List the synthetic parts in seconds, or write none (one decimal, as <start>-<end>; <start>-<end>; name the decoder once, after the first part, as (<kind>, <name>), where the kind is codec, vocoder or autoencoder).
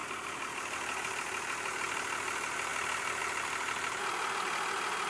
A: none